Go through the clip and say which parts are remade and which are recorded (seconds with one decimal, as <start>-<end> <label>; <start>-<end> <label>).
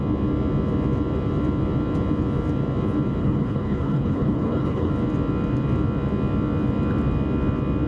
0.0-3.2 recorded; 3.2-4.9 remade; 4.9-7.9 recorded